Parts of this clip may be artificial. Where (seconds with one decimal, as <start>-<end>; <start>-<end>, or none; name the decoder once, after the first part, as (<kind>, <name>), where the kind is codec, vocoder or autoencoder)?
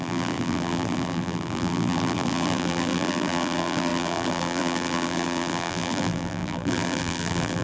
0.0-7.6 (vocoder, BigVGAN v2)